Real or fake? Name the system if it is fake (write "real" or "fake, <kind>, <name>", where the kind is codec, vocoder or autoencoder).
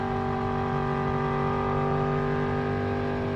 real